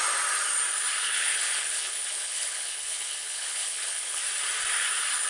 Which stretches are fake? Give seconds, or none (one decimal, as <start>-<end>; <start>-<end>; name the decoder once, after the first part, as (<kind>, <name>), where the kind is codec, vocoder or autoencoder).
1.0-4.2 (codec, HILCodec)